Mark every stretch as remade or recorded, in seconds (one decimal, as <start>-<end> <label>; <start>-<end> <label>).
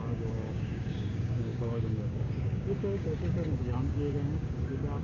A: 0.0-5.0 remade